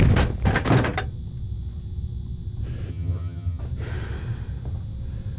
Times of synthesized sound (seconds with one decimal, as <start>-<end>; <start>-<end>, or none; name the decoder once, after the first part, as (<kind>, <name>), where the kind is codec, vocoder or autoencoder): 2.9-3.6 (vocoder, HiFi-GAN)